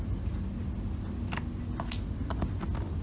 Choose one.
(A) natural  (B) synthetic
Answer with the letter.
A